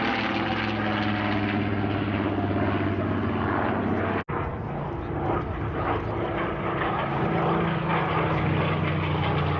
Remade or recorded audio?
recorded